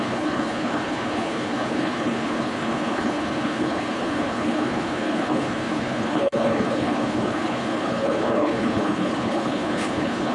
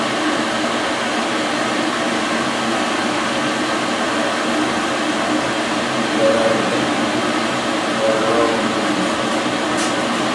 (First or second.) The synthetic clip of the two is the first